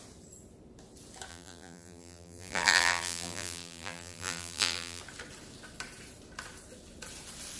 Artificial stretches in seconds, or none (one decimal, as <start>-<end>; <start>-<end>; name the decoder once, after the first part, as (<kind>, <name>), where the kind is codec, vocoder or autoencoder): 1.3-5.0 (vocoder, BigVGAN v2)